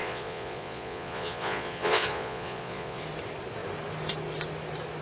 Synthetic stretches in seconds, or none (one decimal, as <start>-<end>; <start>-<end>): 0.0-3.0